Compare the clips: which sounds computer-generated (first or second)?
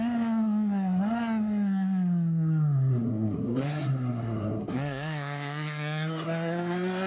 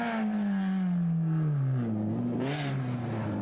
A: first